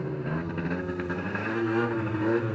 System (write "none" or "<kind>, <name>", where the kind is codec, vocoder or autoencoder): codec, SNAC